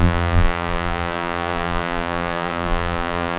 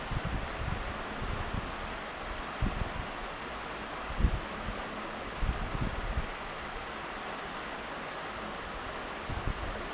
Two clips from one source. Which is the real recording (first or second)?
second